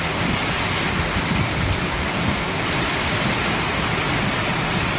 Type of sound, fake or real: real